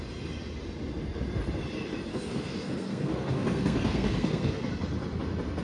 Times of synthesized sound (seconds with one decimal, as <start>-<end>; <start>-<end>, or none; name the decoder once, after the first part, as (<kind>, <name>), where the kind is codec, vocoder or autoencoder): 2.1-4.7 (codec, SNAC)